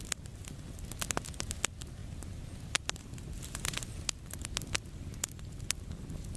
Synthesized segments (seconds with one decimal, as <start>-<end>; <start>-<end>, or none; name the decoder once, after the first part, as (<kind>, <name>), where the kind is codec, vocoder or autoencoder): none